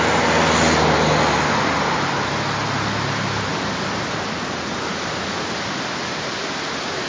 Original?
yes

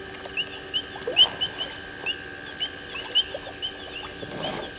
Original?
yes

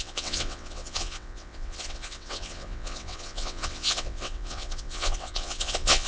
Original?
no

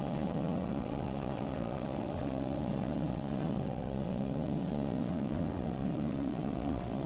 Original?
no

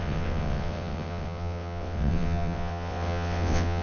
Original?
no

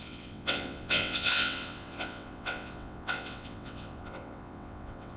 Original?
no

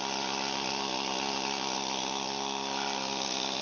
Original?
yes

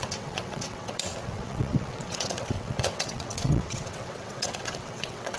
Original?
no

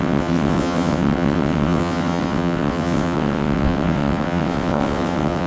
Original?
no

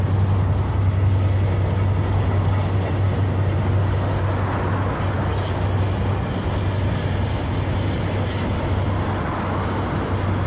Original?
yes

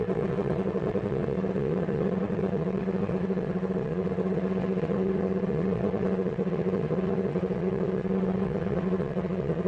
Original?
no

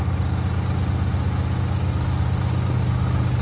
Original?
yes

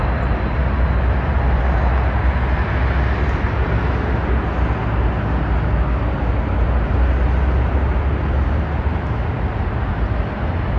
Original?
yes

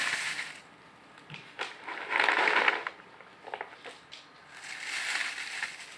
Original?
yes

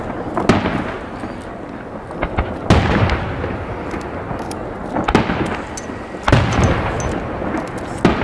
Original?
yes